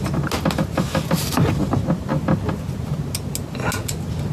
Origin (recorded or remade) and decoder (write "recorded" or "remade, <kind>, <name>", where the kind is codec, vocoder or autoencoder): recorded